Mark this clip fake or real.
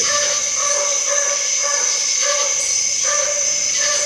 real